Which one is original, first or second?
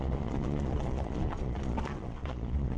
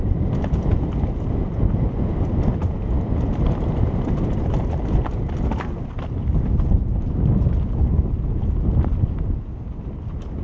second